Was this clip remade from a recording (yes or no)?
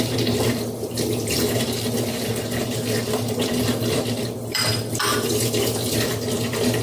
yes